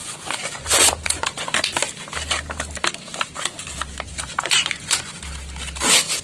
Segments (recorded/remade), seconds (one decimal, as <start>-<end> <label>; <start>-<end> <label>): 0.0-1.5 remade; 1.5-4.3 recorded; 4.3-5.2 remade; 5.2-6.2 recorded